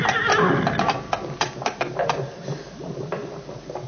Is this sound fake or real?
real